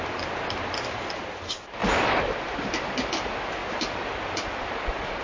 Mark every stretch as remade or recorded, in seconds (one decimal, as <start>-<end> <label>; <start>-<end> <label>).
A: 0.0-5.2 recorded